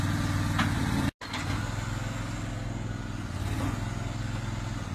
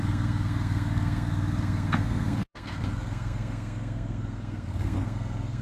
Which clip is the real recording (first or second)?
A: first